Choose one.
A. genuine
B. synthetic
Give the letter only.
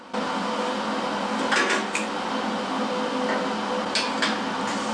A